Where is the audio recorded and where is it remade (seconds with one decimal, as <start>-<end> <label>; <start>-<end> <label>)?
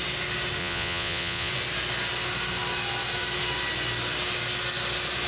0.0-0.6 recorded; 0.6-1.5 remade; 1.5-5.3 recorded